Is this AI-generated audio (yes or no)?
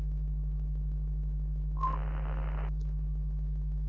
no